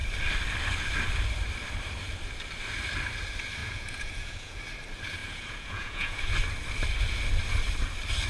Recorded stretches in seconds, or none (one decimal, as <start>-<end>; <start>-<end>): 0.0-3.6; 4.6-5.2; 6.3-8.3